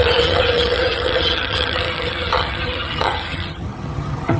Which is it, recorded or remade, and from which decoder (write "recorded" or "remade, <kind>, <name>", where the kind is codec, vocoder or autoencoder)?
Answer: remade, vocoder, HiFi-GAN